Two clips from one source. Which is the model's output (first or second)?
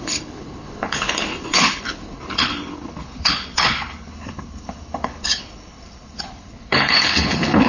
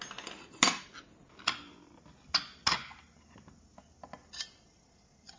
first